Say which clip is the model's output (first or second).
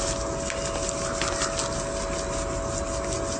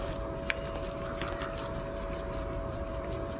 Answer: second